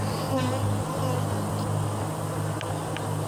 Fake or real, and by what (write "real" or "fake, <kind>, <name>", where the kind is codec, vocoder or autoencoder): real